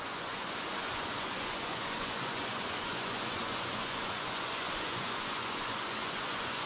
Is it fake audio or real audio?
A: fake